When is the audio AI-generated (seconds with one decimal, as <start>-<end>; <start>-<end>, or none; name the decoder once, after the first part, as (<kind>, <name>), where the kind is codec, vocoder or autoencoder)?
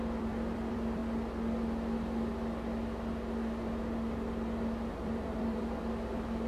0.0-1.0 (vocoder, BigVGAN v2); 4.9-6.5